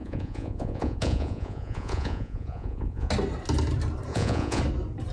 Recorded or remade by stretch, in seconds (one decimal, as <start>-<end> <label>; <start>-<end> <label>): 0.0-3.1 remade; 3.1-4.1 recorded; 4.1-4.6 remade; 4.6-5.1 recorded